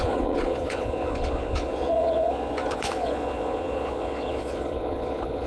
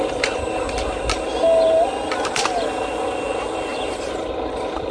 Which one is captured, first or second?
second